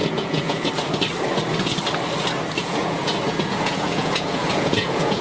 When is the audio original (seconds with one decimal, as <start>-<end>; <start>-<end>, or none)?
0.7-2.6